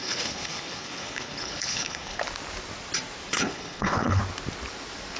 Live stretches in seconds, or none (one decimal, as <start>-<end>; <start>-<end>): 2.2-3.3; 4.2-5.2